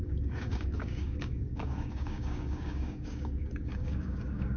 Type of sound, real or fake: fake